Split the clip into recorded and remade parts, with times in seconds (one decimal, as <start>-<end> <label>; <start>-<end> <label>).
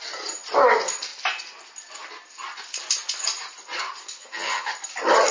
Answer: 0.0-4.2 recorded; 4.2-4.7 remade; 4.7-5.3 recorded